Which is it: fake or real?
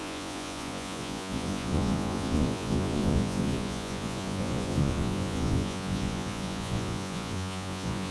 fake